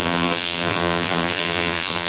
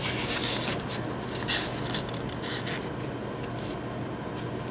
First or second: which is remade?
first